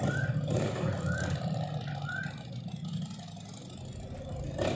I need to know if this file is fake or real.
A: real